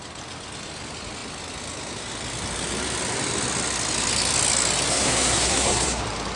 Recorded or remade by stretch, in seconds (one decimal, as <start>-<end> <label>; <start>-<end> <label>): 0.0-4.9 recorded; 4.9-6.0 remade; 6.0-6.4 recorded

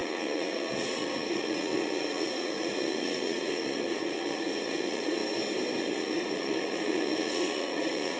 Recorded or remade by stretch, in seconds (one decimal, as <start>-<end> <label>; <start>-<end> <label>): 0.0-5.2 remade; 5.2-5.8 recorded; 5.8-8.2 remade

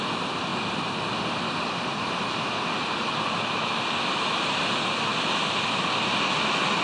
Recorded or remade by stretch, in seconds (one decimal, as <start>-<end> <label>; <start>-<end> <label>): 0.0-6.8 recorded

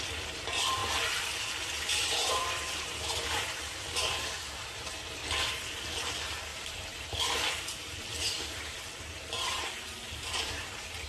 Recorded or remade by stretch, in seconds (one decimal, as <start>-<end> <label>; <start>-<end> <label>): 0.0-0.8 remade; 0.8-1.8 recorded; 1.8-5.2 remade; 5.2-5.8 recorded; 5.8-11.1 remade